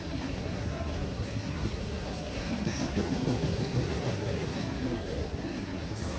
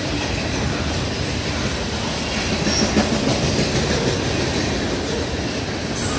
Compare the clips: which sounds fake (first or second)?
first